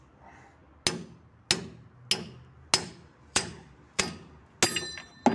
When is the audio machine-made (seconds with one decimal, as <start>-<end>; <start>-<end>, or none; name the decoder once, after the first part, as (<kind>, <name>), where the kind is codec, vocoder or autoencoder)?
2.8-4.0 (vocoder, BigVGAN v2)